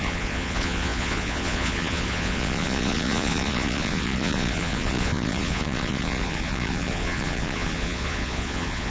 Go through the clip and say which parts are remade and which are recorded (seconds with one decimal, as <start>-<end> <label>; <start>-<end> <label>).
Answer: 0.0-8.9 remade